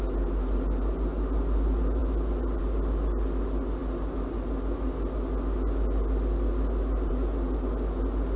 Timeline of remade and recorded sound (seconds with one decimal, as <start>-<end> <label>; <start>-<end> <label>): 0.0-8.4 recorded